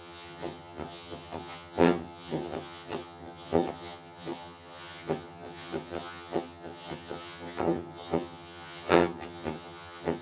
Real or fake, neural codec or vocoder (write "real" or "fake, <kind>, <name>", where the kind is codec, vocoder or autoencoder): fake, vocoder, HiFi-GAN